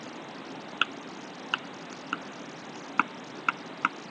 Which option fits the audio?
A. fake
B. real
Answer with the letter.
B